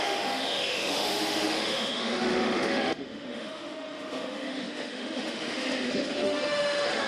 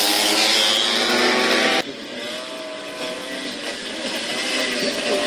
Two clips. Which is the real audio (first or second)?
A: second